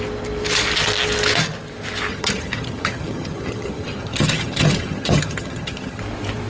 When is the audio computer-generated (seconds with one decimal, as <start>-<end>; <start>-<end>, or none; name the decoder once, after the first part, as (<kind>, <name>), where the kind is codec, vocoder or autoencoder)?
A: 2.1-6.0 (vocoder, HiFi-GAN)